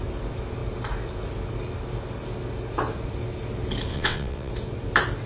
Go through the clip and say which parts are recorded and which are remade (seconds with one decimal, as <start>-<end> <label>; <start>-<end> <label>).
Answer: 0.0-3.9 recorded; 3.9-4.5 remade; 4.5-5.3 recorded